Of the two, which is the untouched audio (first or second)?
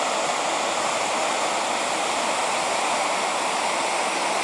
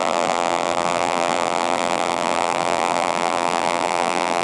first